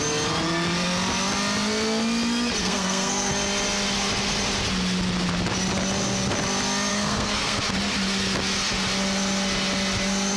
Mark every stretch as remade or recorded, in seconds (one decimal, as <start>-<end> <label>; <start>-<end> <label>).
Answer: 0.0-2.6 recorded; 2.6-3.3 remade; 3.3-6.9 recorded; 6.9-7.6 remade; 7.6-10.4 recorded